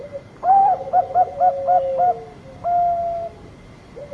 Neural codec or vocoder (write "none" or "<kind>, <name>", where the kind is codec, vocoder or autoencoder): none